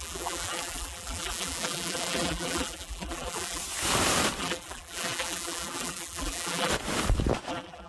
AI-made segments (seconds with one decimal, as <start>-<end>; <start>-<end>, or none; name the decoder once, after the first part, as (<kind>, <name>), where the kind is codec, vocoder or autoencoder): 0.0-3.6 (vocoder, BigVGAN v2); 4.4-6.7; 7.5-7.9